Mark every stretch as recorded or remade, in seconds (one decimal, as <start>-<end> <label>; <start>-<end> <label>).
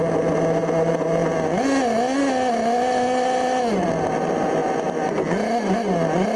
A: 0.0-6.4 recorded